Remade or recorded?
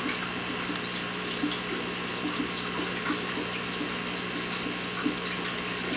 recorded